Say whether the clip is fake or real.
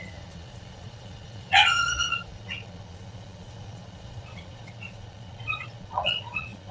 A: fake